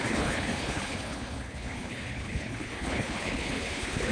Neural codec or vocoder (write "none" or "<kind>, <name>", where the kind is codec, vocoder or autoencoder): codec, HILCodec